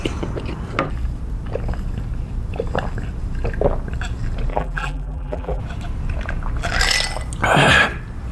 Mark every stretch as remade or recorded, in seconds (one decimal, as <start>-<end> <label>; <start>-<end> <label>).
0.0-4.5 recorded; 4.5-5.6 remade; 5.6-8.3 recorded